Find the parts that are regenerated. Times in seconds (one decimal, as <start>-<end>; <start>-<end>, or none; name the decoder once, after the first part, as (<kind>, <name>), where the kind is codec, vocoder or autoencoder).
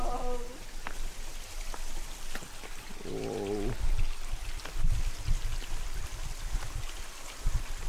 none